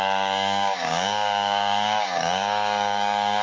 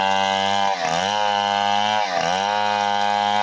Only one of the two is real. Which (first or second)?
second